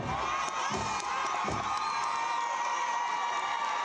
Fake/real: real